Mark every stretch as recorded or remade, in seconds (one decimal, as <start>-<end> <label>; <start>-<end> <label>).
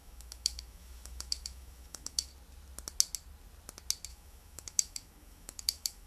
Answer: 0.0-2.3 remade; 2.3-4.1 recorded; 4.1-6.1 remade